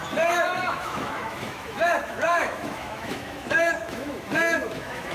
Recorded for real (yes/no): no